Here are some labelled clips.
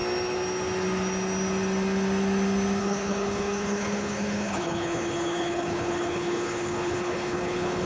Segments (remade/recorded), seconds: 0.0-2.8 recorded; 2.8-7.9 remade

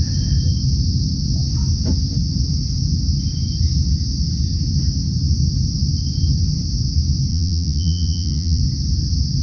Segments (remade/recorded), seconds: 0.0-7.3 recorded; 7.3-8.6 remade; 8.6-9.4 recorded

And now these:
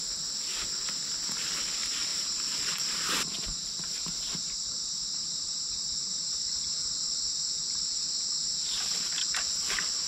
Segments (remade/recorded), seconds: 0.0-2.1 recorded; 2.1-6.8 remade; 6.8-10.1 recorded

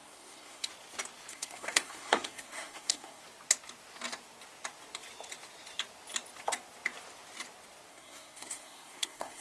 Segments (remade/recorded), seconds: 0.0-0.7 remade; 0.7-1.3 recorded; 1.3-3.2 remade; 3.2-7.9 recorded; 7.9-9.4 remade

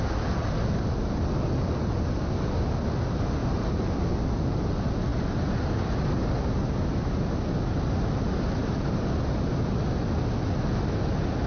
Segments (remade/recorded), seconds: 0.0-3.4 recorded; 3.4-4.1 remade; 4.1-8.6 recorded; 8.6-9.8 remade; 9.8-11.5 recorded

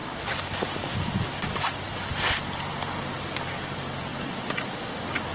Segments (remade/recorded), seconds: 0.0-5.3 recorded

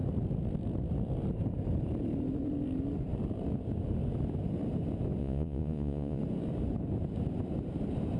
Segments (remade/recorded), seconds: 0.0-5.2 recorded; 5.2-6.2 remade; 6.2-8.2 recorded

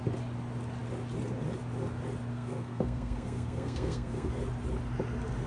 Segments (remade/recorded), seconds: 0.0-2.3 recorded; 2.3-4.3 remade; 4.3-5.5 recorded